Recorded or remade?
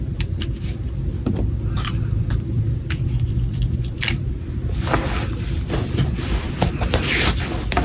remade